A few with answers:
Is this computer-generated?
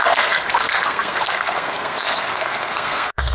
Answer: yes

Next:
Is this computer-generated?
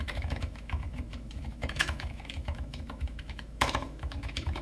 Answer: yes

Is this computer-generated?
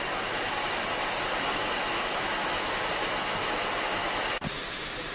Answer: no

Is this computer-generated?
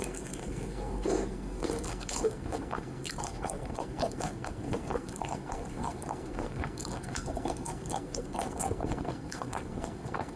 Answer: yes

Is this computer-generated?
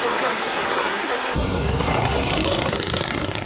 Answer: yes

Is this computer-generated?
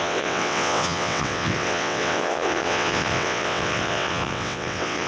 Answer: yes